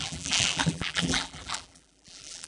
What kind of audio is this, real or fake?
fake